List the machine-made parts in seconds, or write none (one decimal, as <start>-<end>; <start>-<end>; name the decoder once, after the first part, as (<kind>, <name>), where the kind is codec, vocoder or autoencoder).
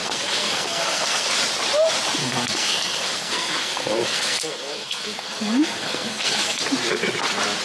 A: 0.0-1.3 (codec, SNAC); 2.2-6.6